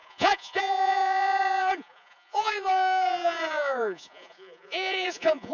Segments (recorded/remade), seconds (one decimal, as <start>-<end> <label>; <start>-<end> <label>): 0.0-5.5 remade